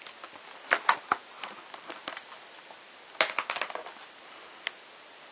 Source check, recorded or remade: recorded